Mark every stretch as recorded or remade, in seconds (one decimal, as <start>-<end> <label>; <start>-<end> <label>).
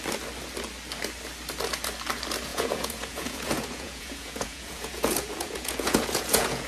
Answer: 0.0-2.5 recorded; 2.5-6.7 remade